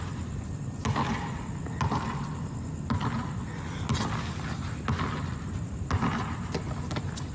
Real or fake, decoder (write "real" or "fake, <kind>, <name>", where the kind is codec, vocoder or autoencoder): real